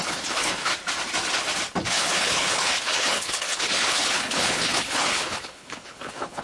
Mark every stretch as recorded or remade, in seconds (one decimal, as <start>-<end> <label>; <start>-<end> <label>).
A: 0.0-0.7 remade; 0.7-1.8 recorded; 1.8-6.4 remade